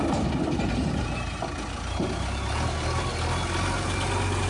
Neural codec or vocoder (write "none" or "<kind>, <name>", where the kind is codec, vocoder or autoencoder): none